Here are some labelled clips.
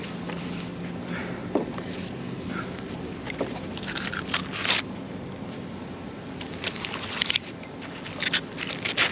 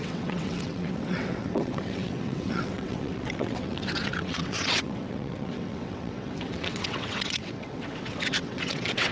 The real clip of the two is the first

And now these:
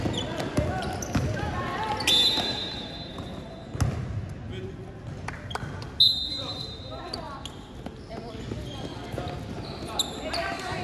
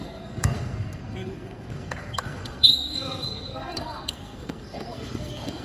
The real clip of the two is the first